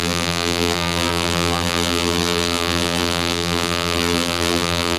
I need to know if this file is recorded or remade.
remade